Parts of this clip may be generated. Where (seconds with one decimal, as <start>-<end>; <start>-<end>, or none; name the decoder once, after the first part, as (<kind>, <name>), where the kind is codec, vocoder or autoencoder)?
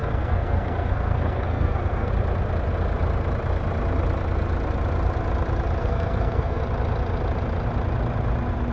0.0-2.1 (codec, SNAC); 5.8-6.6